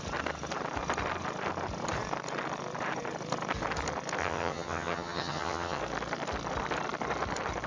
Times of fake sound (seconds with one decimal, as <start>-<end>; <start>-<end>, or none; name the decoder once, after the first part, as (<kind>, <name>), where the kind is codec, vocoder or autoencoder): 4.2-5.8 (vocoder, HiFi-GAN)